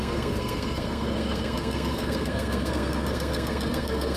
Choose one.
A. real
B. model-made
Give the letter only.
B